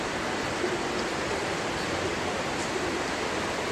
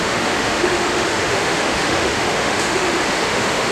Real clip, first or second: first